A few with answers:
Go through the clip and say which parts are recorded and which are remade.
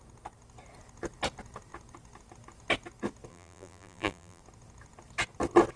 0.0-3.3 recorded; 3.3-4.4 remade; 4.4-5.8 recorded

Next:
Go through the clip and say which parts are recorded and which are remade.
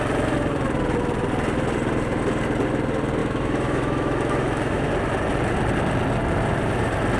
0.0-3.2 recorded; 3.2-4.9 remade; 4.9-7.2 recorded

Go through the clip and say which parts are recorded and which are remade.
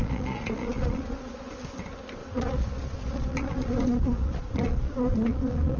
0.0-1.5 remade; 1.5-2.2 recorded; 2.2-5.8 remade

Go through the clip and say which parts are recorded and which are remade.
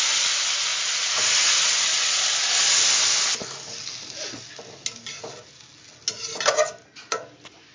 0.0-7.7 recorded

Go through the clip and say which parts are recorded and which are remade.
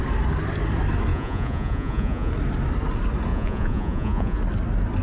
0.0-1.1 recorded; 1.1-2.3 remade; 2.3-3.3 recorded; 3.3-4.4 remade; 4.4-5.0 recorded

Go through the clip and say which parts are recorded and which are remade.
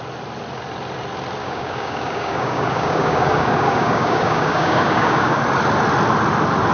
0.0-1.4 recorded; 1.4-5.4 remade; 5.4-6.7 recorded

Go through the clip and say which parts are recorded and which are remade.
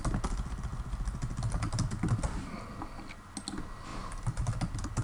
0.0-3.9 recorded; 3.9-4.5 remade; 4.5-5.0 recorded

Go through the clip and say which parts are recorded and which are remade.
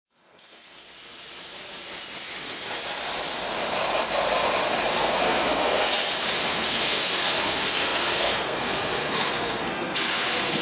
0.0-0.8 remade; 0.8-4.9 recorded; 4.9-5.9 remade; 5.9-6.5 recorded; 6.5-10.6 remade